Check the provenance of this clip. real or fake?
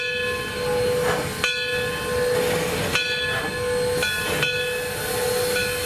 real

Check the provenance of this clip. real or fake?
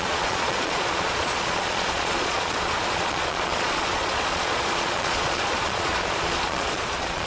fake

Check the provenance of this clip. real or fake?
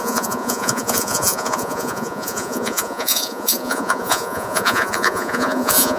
fake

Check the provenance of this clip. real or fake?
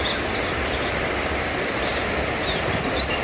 real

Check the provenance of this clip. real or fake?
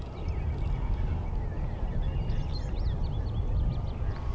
real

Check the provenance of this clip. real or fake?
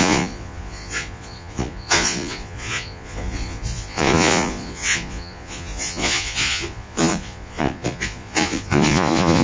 fake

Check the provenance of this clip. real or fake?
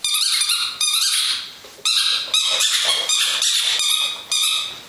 real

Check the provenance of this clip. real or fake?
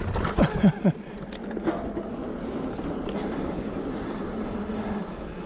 real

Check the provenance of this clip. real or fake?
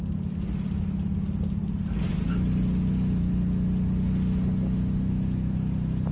real